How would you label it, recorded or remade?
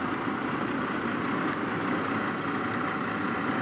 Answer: recorded